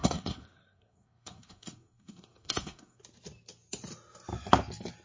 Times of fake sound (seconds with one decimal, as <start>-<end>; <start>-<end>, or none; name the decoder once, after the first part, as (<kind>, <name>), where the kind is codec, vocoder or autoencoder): 0.0-3.0 (codec, SNAC)